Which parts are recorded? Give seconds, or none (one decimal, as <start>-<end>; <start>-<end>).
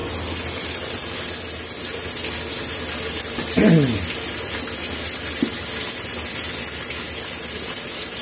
0.0-8.2